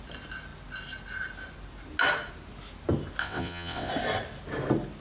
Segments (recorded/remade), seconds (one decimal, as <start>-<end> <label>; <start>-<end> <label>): 0.0-3.2 recorded; 3.2-3.9 remade; 3.9-5.0 recorded